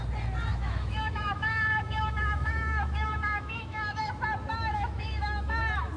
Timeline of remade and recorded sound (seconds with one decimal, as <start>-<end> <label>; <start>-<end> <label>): 0.0-0.5 recorded; 0.5-4.1 remade; 4.1-4.6 recorded; 4.6-5.6 remade; 5.6-6.0 recorded